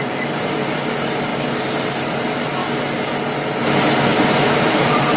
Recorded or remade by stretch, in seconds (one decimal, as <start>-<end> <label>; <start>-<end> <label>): 0.0-2.6 remade; 2.6-3.6 recorded; 3.6-5.2 remade